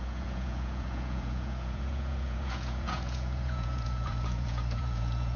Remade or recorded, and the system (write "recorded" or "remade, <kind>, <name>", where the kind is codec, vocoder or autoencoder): remade, vocoder, Vocos